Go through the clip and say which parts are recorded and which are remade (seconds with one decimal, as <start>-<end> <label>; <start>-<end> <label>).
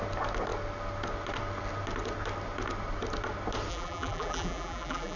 0.0-3.7 recorded; 3.7-5.2 remade